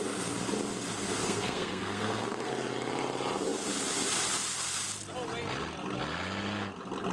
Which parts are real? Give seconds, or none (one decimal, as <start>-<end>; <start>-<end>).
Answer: 0.0-1.2; 2.5-7.1

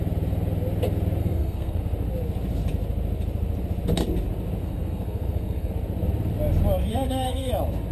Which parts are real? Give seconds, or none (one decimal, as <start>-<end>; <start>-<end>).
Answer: 0.0-1.2; 1.8-4.6; 5.7-6.9; 7.5-7.9